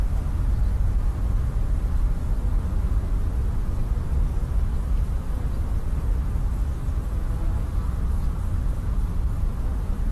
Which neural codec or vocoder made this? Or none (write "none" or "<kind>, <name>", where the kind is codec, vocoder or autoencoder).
none